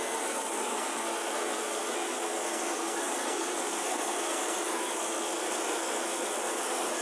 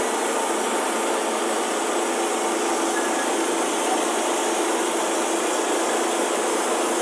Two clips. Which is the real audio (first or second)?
second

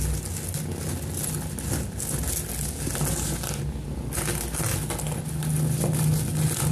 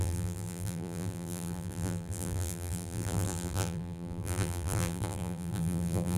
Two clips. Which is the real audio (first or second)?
first